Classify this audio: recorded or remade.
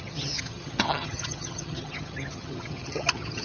remade